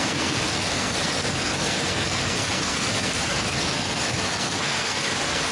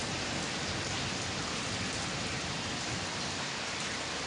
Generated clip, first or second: first